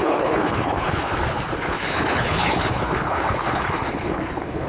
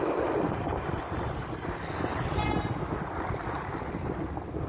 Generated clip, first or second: first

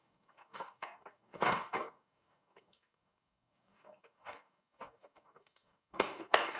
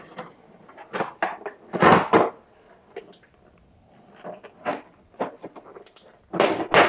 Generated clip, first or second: first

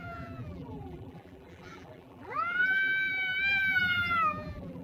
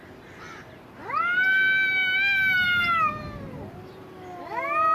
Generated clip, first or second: first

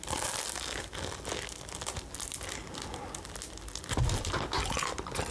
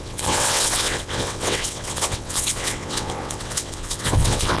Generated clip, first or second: second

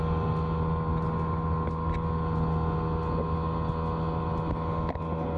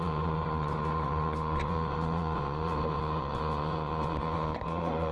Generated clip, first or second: second